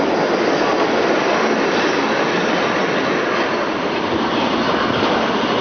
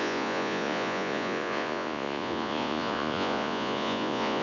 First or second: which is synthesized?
second